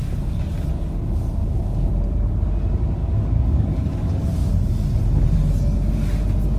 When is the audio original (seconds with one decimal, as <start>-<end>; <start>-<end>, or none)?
0.0-1.4; 1.9-3.0; 4.5-6.6

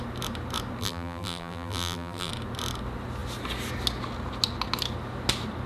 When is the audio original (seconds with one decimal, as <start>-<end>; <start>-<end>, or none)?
0.0-0.8; 2.3-5.7

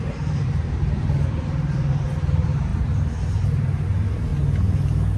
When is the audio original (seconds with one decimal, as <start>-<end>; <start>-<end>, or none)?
4.3-5.2

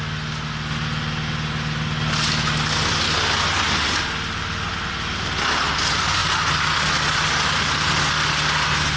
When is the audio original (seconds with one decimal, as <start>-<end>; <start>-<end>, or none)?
0.0-9.0

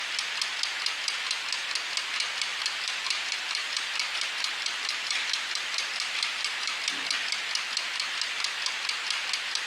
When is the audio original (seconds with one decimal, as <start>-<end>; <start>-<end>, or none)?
0.0-2.5; 6.8-9.7

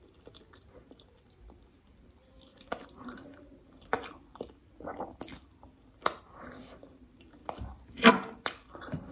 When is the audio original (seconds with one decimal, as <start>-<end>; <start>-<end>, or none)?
4.9-6.2